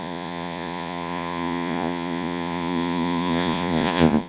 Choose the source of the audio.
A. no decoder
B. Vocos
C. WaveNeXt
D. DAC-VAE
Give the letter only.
B